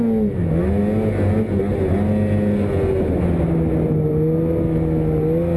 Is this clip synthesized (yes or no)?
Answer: no